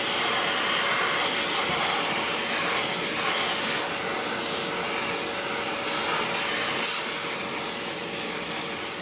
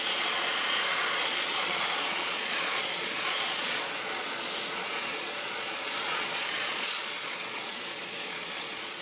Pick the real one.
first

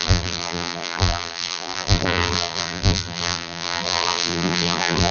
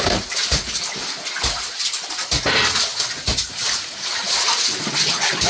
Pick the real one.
second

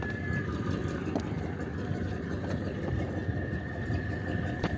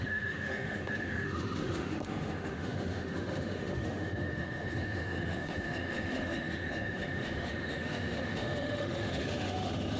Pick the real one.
first